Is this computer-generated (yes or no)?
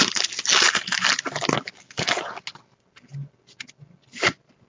no